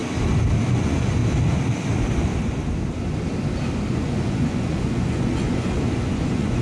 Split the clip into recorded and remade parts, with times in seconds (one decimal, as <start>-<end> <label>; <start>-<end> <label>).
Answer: 0.0-0.7 recorded; 0.7-1.2 remade; 1.2-3.9 recorded; 3.9-6.6 remade